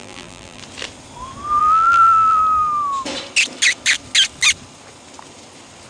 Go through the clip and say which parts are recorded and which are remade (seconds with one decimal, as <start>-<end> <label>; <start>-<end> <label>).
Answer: 0.0-0.6 remade; 0.6-1.6 recorded; 1.6-2.4 remade; 2.4-5.9 recorded